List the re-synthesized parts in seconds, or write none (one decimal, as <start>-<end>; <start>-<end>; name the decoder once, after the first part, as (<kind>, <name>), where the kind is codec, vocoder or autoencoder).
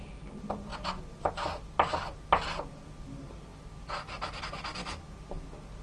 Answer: none